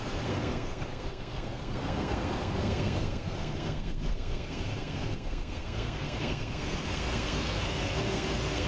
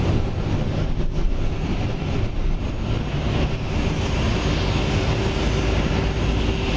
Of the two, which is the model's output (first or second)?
first